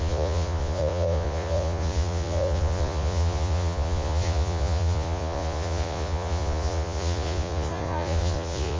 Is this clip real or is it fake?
fake